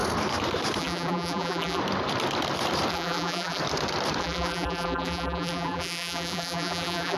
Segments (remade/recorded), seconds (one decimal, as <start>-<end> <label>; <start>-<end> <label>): 0.0-0.8 recorded; 0.8-1.8 remade; 1.8-2.9 recorded; 2.9-3.6 remade; 3.6-4.2 recorded; 4.2-7.2 remade